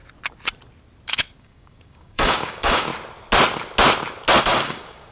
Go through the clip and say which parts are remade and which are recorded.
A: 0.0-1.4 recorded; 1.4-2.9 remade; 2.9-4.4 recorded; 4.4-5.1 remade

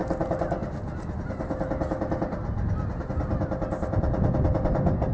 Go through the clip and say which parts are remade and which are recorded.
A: 0.0-5.1 recorded

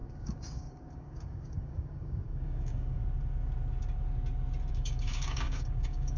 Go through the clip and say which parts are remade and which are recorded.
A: 0.0-3.0 remade; 3.0-4.7 recorded; 4.7-6.2 remade

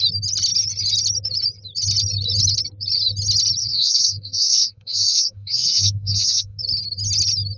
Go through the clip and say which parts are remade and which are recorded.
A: 0.0-3.6 recorded; 3.6-6.6 remade; 6.6-7.6 recorded

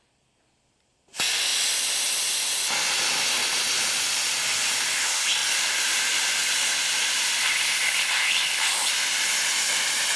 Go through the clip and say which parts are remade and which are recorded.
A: 0.0-10.2 recorded